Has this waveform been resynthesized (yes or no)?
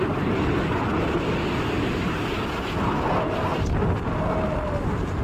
no